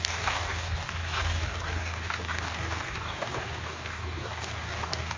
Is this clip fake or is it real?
fake